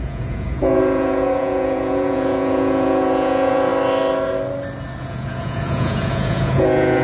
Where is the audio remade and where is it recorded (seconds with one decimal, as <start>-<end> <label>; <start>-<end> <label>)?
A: 0.0-3.7 remade; 3.7-5.0 recorded; 5.0-7.0 remade